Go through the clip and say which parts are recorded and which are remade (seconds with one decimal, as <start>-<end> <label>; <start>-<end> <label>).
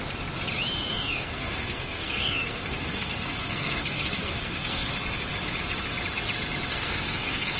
0.0-0.9 recorded; 0.9-4.9 remade; 4.9-6.7 recorded; 6.7-7.6 remade